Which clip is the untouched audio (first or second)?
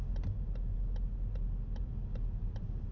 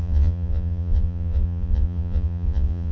first